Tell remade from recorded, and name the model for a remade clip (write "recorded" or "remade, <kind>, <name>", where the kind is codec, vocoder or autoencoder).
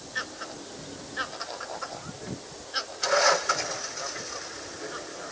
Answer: recorded